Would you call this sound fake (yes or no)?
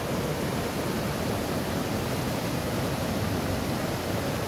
yes